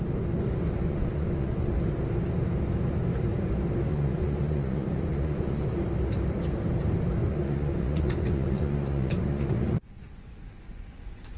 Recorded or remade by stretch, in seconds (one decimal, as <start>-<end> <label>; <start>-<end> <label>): 0.0-0.8 recorded; 0.8-1.7 remade; 1.7-3.9 recorded; 3.9-5.6 remade; 5.6-7.2 recorded; 7.2-11.4 remade